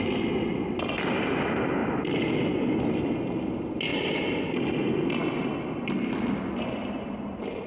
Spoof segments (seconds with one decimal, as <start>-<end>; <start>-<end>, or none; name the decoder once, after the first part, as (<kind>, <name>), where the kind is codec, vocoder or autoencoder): 3.9-4.6 (vocoder, BigVGAN v2)